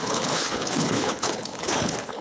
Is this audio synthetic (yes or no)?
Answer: yes